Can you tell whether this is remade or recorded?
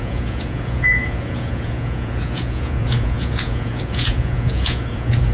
remade